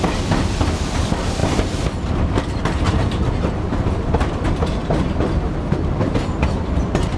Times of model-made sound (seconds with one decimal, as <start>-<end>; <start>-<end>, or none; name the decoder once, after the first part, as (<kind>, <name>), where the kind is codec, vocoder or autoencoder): 1.4-4.3 (vocoder, BigVGAN v2); 4.8-7.2